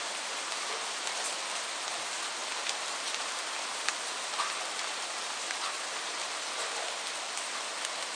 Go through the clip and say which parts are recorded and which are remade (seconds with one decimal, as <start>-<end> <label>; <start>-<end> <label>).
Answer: 0.0-8.2 recorded

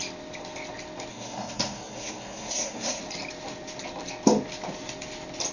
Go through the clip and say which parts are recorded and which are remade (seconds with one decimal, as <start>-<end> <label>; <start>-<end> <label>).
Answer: 0.0-1.1 recorded; 1.1-3.0 remade; 3.0-5.5 recorded

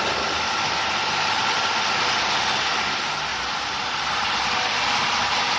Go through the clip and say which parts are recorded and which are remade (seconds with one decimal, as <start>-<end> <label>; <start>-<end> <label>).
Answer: 0.0-5.6 recorded

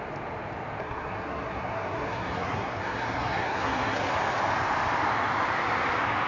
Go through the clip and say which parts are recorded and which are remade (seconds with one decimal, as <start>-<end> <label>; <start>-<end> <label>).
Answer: 0.0-0.8 recorded; 0.8-4.2 remade; 4.2-6.3 recorded

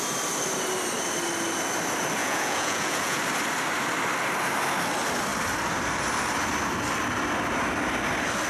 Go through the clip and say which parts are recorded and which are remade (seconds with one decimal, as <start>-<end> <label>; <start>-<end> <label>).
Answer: 0.0-2.2 recorded; 2.2-3.2 remade; 3.2-8.5 recorded